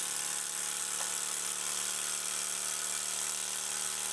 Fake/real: real